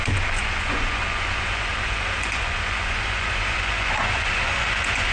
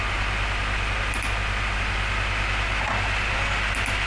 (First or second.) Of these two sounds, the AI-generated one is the first